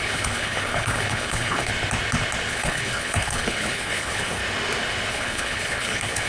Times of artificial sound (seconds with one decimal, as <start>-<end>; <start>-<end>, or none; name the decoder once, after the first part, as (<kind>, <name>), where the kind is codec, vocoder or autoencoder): 0.0-1.7 (codec, HILCodec); 2.5-4.4; 5.1-6.3